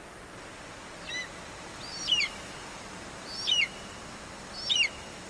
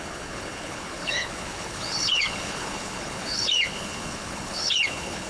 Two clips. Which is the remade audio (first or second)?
second